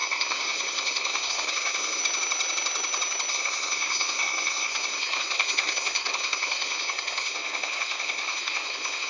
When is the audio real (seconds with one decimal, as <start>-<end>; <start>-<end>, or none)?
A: 2.0-3.3